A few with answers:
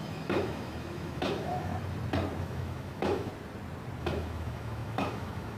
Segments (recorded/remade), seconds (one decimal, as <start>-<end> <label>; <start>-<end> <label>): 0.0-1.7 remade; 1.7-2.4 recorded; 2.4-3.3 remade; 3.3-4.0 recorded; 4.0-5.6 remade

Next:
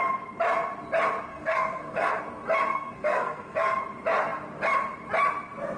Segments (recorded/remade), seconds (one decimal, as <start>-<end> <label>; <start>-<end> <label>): 0.0-1.3 recorded; 1.3-2.2 remade; 2.2-2.7 recorded; 2.7-3.8 remade; 3.8-5.8 recorded

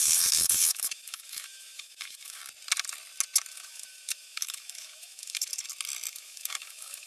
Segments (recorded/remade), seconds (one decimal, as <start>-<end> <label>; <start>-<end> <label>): 0.0-2.4 remade; 2.4-3.5 recorded; 3.5-5.5 remade; 5.5-6.1 recorded; 6.1-7.1 remade